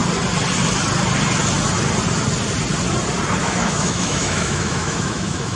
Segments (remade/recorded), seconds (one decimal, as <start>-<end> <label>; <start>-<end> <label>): 0.0-3.4 recorded; 3.4-5.6 remade

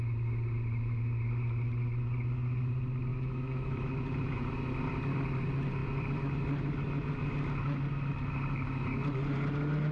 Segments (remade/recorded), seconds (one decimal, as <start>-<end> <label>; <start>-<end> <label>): 0.0-3.1 recorded; 3.1-3.9 remade; 3.9-9.9 recorded

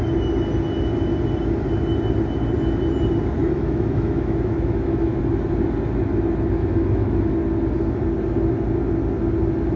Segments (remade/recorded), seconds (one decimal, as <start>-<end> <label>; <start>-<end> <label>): 0.0-3.4 recorded; 3.4-5.2 remade; 5.2-6.6 recorded; 6.6-7.3 remade; 7.3-9.8 recorded

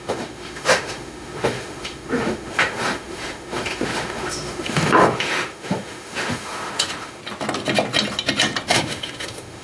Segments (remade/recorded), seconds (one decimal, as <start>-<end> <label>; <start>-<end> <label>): 0.0-7.2 remade; 7.2-8.7 recorded; 8.7-9.6 remade

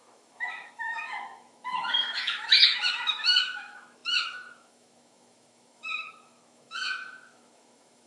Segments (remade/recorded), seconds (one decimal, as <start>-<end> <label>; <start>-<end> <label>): 0.0-8.1 remade

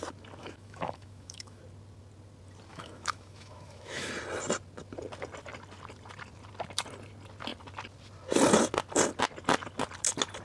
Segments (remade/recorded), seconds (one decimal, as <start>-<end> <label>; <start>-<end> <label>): 0.0-0.4 recorded; 0.4-1.6 remade; 1.6-2.7 recorded; 2.7-4.1 remade; 4.1-10.4 recorded